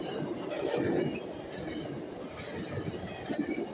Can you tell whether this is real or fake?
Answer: real